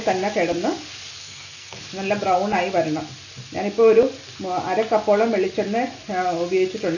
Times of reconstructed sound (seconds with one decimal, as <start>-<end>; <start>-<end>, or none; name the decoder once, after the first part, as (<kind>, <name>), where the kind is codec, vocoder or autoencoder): 1.2-1.8 (codec, SNAC)